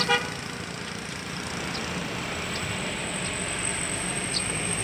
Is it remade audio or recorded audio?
remade